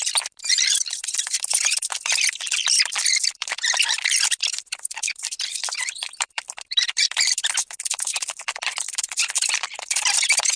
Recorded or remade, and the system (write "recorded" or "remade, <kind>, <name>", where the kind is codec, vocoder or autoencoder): remade, vocoder, BigVGAN v2